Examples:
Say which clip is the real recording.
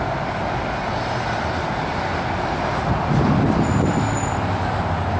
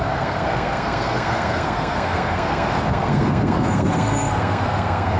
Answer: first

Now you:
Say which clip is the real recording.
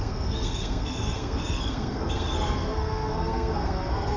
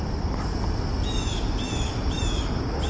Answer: second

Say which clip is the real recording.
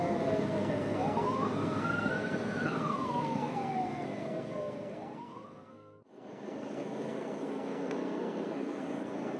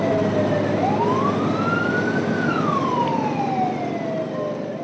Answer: second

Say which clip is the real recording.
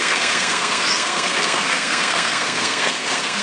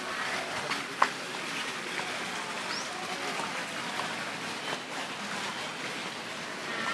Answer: second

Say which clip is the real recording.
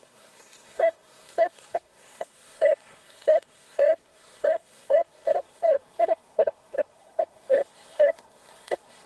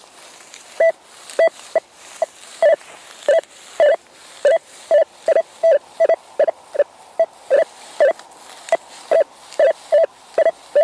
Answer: second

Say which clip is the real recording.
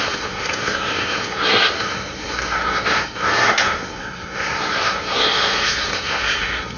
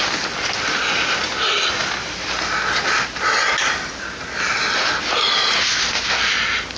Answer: second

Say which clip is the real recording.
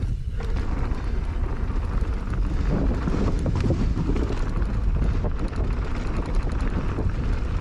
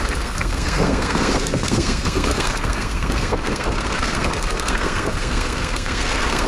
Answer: first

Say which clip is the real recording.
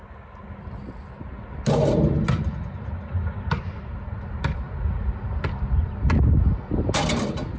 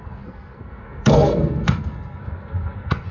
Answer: first